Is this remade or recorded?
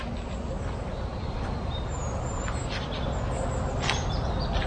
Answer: recorded